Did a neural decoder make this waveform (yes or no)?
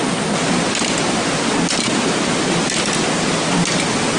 no